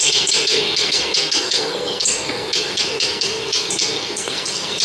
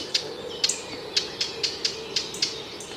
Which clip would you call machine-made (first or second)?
first